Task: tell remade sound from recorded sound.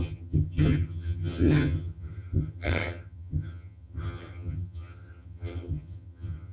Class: remade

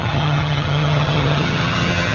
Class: remade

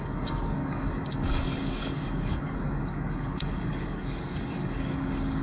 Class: remade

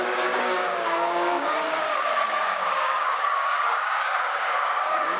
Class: remade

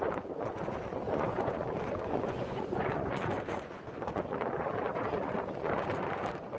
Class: remade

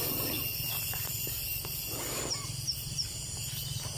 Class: remade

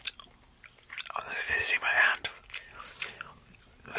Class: recorded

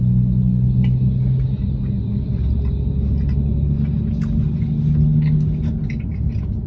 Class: recorded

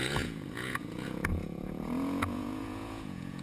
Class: remade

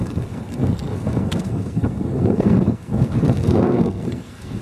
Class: remade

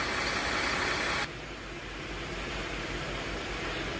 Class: recorded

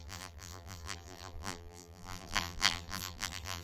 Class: remade